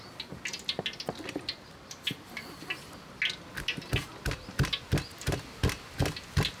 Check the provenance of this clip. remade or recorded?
recorded